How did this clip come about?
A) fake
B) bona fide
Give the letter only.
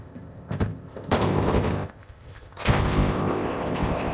A